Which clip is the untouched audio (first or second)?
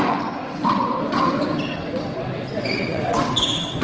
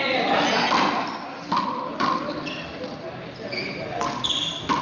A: second